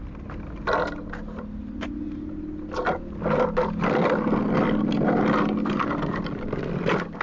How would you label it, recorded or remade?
recorded